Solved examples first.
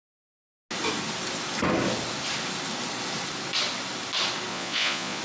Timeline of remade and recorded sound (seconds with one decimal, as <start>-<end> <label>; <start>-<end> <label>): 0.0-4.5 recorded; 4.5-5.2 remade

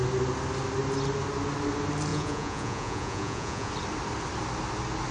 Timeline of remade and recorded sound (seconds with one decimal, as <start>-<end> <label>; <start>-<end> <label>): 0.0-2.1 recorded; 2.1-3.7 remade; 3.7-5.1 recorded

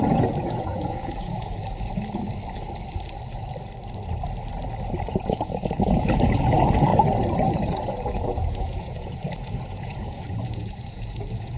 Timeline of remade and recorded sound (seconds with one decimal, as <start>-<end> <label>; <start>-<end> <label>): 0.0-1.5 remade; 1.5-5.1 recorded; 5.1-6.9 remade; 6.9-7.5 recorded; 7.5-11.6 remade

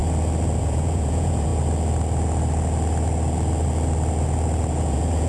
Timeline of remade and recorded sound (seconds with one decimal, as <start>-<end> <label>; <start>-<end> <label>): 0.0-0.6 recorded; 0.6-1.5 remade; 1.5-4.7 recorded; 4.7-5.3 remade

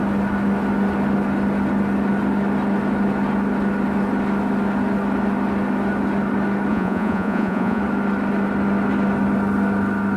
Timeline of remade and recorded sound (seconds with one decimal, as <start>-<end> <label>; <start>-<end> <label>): 0.0-6.7 recorded; 6.7-7.8 remade; 7.8-10.2 recorded

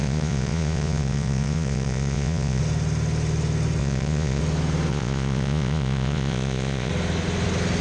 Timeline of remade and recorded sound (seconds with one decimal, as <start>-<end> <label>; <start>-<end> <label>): 0.0-2.6 remade; 2.6-3.8 recorded; 3.8-4.4 remade; 4.4-4.9 recorded; 4.9-6.9 remade; 6.9-7.8 recorded

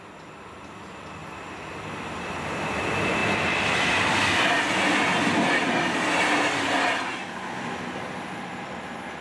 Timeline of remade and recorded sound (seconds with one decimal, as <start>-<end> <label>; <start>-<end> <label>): 0.0-9.2 recorded